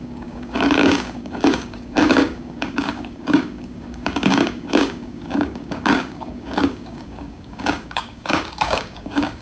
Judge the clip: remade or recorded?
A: remade